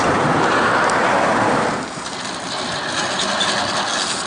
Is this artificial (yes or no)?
no